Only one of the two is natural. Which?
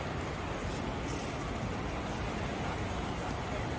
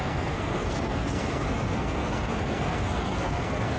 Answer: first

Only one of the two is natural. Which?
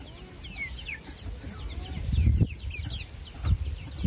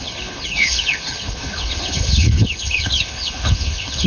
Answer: first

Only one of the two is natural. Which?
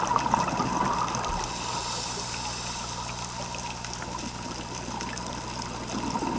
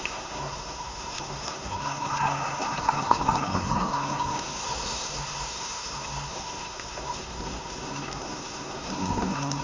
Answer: first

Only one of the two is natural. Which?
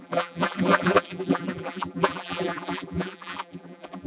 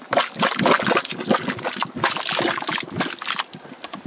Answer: second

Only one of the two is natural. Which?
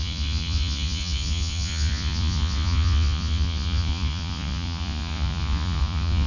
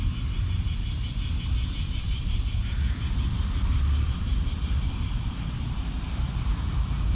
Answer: second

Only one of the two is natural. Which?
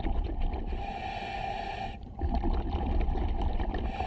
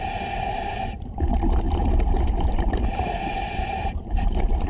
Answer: first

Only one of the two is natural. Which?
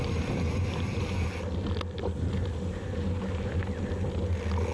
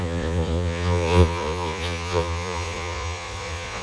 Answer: first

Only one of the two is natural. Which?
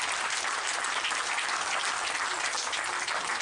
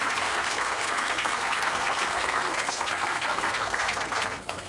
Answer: first